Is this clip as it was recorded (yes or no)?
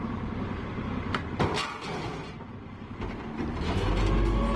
yes